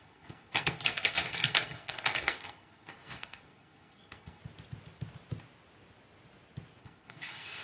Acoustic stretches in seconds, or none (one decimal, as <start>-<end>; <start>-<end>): 4.4-6.8